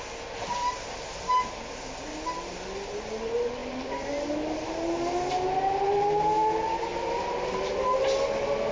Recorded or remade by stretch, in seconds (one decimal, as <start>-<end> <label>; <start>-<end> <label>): 0.0-3.6 recorded; 3.6-4.1 remade; 4.1-6.9 recorded; 6.9-8.0 remade; 8.0-8.7 recorded